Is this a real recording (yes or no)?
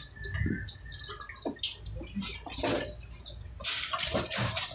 yes